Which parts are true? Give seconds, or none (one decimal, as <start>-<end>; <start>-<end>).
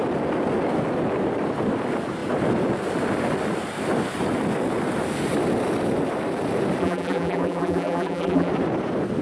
0.0-6.8; 8.5-9.2